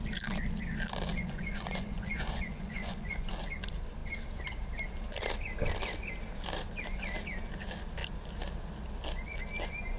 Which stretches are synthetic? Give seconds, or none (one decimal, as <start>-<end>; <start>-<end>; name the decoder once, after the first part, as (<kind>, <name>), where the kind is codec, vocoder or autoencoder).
1.1-3.3 (vocoder, Vocos)